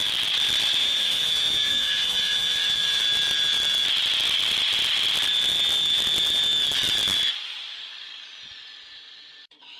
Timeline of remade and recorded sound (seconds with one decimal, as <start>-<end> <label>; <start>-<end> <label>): 0.0-0.8 recorded; 0.8-3.0 remade; 3.0-9.8 recorded